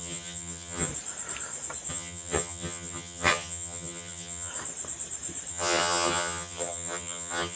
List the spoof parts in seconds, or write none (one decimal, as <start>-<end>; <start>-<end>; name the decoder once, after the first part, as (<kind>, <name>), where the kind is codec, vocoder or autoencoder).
0.0-0.9 (vocoder, HiFi-GAN); 1.9-4.5; 5.5-7.6